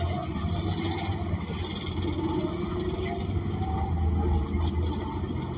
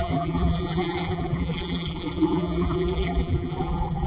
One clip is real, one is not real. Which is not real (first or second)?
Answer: second